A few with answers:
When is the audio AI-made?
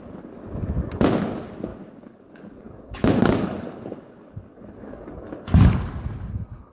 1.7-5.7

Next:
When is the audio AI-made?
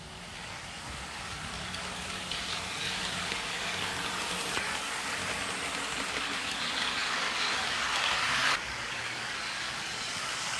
0.0-3.9; 4.6-5.2; 6.1-10.6